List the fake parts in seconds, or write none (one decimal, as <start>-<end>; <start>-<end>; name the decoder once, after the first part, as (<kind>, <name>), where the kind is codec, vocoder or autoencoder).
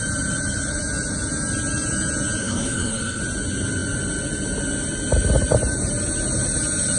2.4-3.2 (codec, SNAC)